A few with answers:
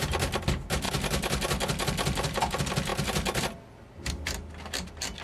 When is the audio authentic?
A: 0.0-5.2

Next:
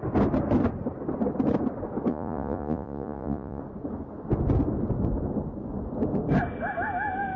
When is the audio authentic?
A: 0.0-2.1; 3.6-7.4

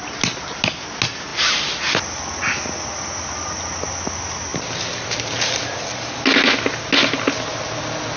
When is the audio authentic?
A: 0.0-8.2

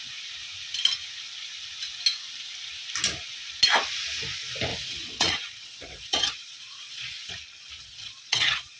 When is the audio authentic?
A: 0.0-4.7; 7.3-7.8